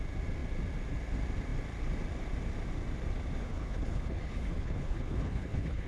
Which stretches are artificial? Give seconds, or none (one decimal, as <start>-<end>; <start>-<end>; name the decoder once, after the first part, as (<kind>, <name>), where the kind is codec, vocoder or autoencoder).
3.4-5.9 (codec, HILCodec)